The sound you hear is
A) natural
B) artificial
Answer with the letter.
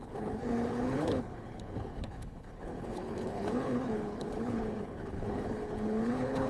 B